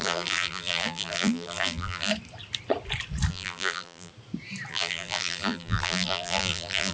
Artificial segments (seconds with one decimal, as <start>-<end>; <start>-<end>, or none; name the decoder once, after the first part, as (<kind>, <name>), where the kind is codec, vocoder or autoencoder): 0.0-2.1 (vocoder, BigVGAN v2); 3.3-4.1; 4.7-6.9